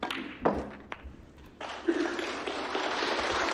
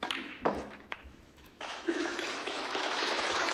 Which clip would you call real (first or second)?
first